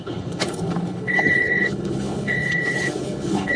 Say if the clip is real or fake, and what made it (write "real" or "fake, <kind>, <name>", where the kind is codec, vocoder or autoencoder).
fake, codec, HILCodec